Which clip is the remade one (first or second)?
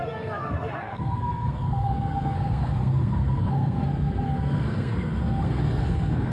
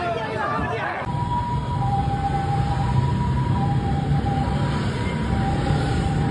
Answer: first